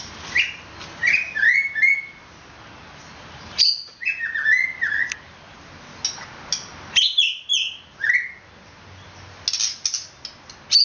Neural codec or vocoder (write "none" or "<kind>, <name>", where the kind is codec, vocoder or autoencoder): none